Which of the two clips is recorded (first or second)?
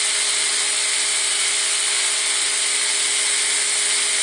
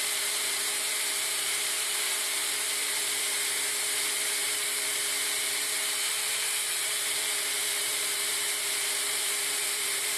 first